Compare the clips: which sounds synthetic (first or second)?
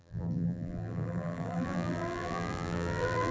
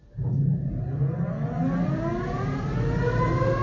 first